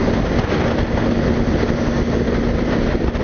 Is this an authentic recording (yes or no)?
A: yes